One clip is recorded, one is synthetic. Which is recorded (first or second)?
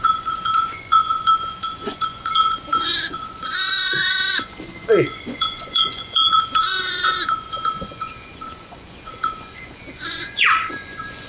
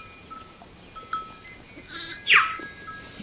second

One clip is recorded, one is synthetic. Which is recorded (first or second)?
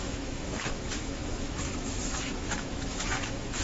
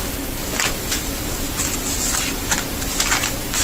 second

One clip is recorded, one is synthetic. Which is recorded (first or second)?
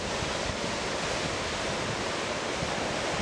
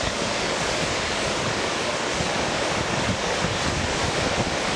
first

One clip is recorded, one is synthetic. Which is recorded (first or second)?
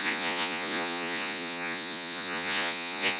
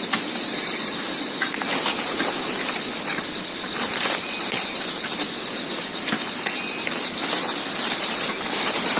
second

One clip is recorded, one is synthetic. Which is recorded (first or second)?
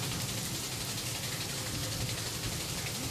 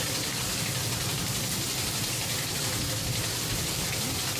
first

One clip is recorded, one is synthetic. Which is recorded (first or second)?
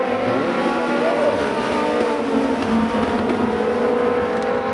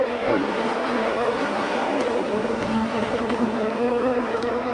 first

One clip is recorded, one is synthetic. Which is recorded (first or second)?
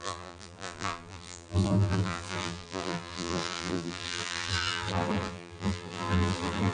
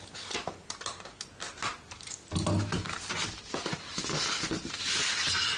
second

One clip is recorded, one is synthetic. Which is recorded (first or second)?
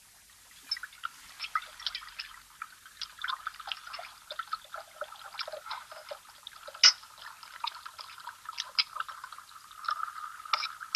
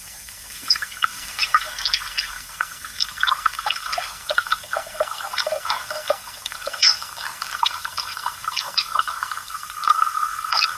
first